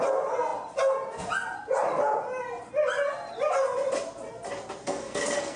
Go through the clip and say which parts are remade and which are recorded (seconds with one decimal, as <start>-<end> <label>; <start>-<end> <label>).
0.0-4.8 recorded; 4.8-5.6 remade